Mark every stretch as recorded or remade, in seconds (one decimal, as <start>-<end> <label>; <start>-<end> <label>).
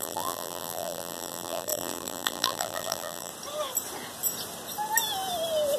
0.0-3.3 remade; 3.3-5.8 recorded